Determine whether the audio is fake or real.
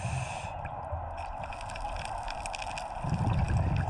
real